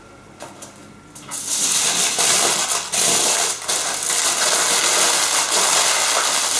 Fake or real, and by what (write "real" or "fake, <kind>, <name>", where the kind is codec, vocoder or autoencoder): real